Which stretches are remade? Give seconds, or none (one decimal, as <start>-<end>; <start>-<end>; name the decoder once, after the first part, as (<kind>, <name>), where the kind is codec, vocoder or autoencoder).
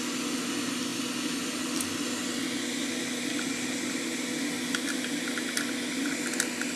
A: none